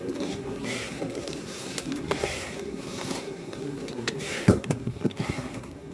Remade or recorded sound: remade